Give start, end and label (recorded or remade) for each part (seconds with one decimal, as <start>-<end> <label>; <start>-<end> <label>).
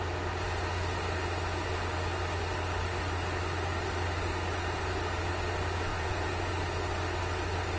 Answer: 0.0-5.9 recorded; 5.9-6.5 remade; 6.5-7.8 recorded